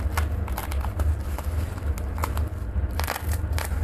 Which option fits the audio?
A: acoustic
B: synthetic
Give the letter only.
A